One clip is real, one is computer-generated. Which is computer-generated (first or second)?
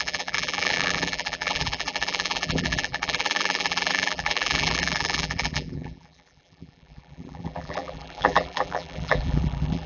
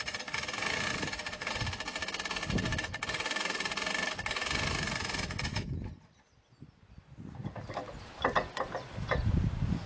first